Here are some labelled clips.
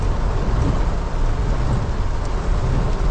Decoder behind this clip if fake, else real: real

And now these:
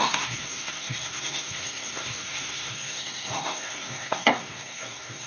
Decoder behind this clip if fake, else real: fake, codec, SNAC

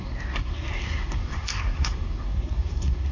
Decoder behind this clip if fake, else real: fake, codec, SNAC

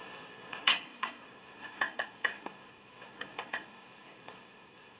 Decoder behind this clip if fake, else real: fake, codec, SNAC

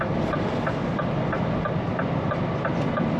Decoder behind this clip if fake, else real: real